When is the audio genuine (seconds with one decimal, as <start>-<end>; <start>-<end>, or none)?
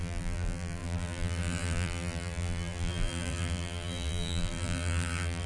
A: none